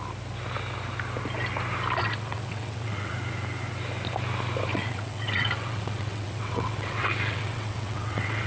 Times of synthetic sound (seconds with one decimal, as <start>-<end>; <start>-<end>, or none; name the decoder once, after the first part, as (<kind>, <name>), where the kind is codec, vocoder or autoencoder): 2.0-3.1 (vocoder, WaveNeXt); 4.7-8.5